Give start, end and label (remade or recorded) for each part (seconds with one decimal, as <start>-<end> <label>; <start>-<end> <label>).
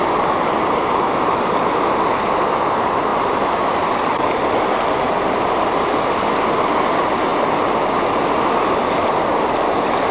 0.0-10.1 recorded